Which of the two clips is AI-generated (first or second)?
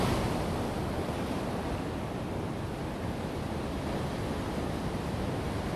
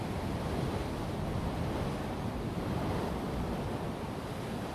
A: second